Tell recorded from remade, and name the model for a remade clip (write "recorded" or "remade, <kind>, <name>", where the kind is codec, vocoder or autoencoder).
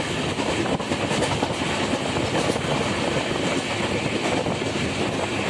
recorded